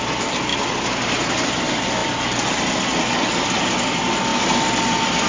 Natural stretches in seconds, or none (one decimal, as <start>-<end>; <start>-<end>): 0.0-5.3